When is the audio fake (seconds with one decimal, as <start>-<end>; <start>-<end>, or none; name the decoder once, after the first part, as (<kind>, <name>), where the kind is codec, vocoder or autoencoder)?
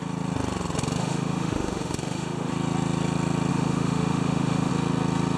1.0-2.5 (autoencoder, DAC-VAE); 3.5-4.7